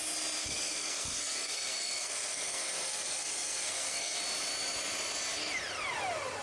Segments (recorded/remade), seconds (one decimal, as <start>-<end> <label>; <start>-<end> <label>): 0.0-0.4 recorded; 0.4-4.2 remade; 4.2-6.4 recorded